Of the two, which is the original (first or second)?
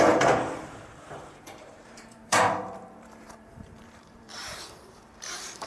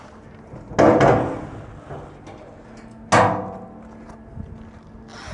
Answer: second